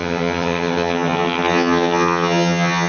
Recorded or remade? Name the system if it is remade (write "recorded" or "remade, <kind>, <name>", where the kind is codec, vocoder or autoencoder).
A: remade, vocoder, HiFi-GAN